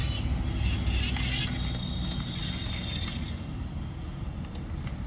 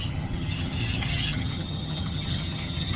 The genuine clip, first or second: first